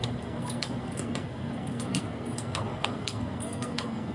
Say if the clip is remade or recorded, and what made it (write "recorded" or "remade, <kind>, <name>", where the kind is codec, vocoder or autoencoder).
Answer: remade, codec, SNAC